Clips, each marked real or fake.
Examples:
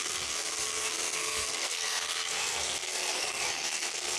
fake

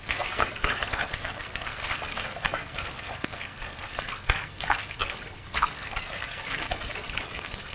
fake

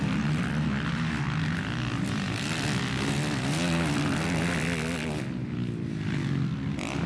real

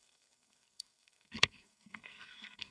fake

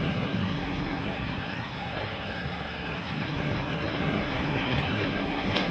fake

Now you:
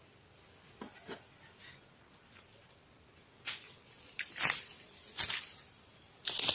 real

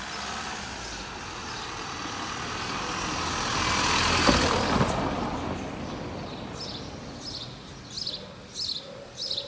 real